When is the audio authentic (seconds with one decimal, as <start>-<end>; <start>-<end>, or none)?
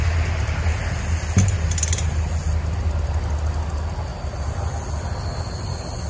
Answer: 0.0-6.1